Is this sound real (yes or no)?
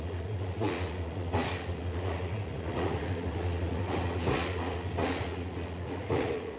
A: no